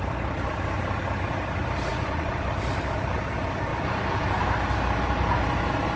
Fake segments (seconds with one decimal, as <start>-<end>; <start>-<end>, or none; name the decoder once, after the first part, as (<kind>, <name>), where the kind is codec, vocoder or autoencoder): 1.9-2.4 (vocoder, Vocos)